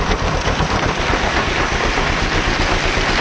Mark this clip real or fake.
real